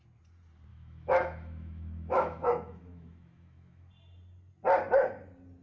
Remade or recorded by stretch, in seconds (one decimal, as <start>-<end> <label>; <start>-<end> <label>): 0.0-0.7 recorded; 0.7-3.9 remade; 3.9-5.6 recorded